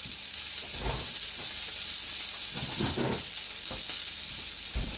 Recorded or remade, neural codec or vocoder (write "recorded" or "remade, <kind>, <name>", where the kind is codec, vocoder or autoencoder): recorded